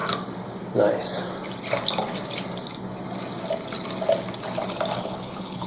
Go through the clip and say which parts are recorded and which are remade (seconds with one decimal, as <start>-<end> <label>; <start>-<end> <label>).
0.0-4.9 recorded; 4.9-5.7 remade